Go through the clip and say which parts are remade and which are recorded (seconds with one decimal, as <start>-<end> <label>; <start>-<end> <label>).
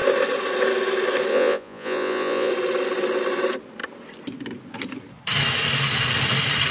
0.0-1.3 recorded; 1.3-2.5 remade; 2.5-6.7 recorded